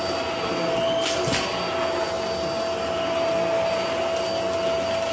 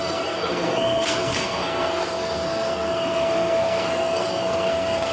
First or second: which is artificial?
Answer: second